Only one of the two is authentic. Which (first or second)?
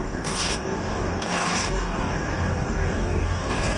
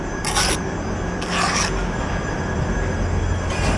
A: second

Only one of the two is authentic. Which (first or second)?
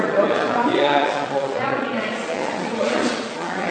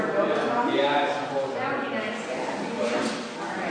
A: second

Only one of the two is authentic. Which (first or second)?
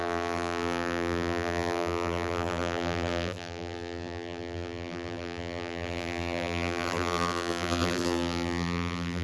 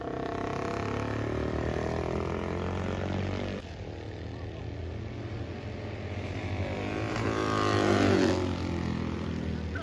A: second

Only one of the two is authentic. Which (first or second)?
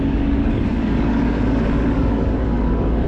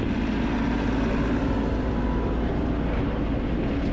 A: second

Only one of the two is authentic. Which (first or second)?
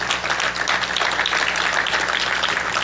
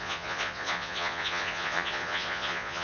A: first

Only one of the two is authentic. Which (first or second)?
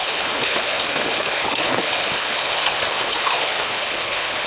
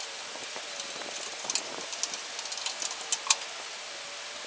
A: second